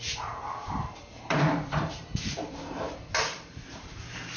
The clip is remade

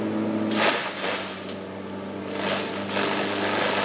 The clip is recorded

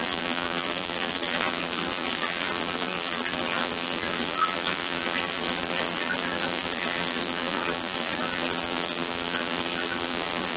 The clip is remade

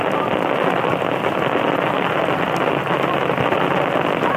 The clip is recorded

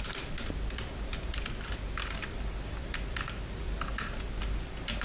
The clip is remade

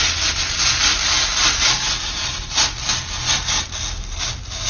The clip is recorded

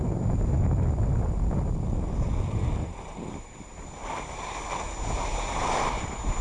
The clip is recorded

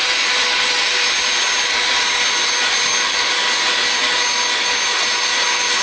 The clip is recorded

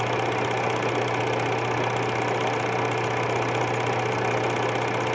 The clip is recorded